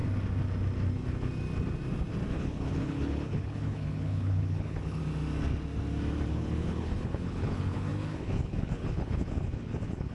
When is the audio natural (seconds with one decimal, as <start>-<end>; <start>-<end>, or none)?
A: 0.0-2.3; 5.0-6.3